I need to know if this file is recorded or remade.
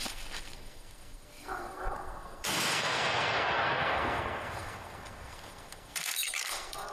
remade